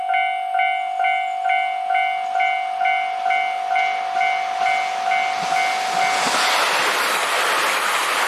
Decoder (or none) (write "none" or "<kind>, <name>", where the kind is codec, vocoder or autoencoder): none